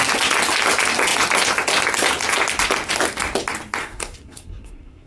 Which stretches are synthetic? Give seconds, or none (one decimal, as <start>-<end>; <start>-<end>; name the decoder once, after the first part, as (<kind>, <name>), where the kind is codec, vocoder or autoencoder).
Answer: 3.8-5.1 (codec, SNAC)